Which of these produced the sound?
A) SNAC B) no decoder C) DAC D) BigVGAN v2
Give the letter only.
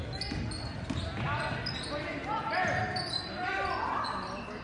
B